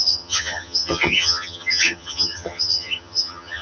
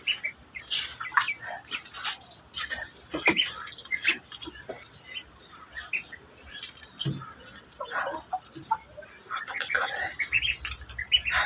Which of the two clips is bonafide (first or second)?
second